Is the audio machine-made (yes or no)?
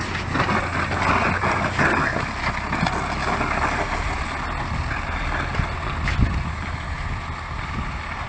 no